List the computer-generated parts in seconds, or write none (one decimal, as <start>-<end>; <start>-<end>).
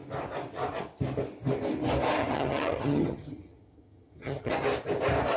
2.2-4.5